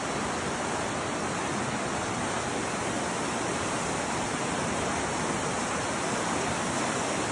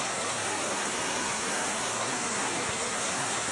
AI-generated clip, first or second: second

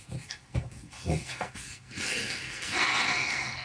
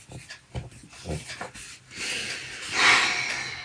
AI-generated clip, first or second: first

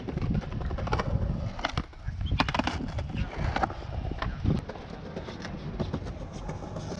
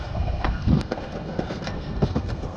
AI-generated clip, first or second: second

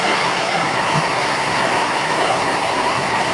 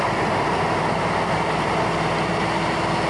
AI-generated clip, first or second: first